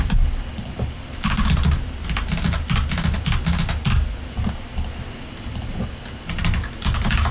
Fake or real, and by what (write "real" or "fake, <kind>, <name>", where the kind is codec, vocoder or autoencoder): real